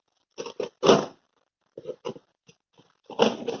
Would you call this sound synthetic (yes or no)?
no